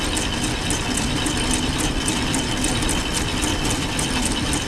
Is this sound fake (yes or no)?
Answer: no